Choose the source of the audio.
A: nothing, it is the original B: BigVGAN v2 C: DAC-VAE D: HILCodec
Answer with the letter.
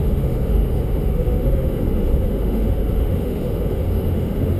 C